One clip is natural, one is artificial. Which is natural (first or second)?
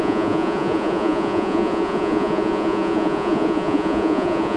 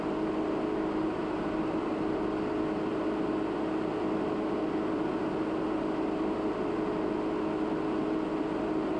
second